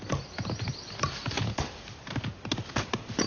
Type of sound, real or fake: real